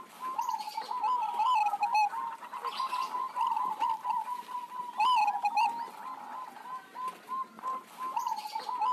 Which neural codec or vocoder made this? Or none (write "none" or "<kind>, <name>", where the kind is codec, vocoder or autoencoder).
none